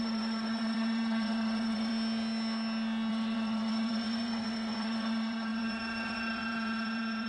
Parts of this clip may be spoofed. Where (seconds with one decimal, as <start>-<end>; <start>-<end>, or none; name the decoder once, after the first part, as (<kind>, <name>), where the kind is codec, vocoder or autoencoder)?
0.0-1.9 (vocoder, WaveNeXt); 3.1-7.3